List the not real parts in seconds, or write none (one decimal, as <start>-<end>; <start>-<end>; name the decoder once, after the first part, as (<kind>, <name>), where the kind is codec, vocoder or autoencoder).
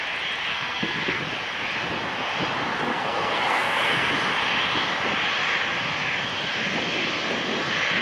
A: 0.5-1.2 (codec, SNAC); 2.9-4.1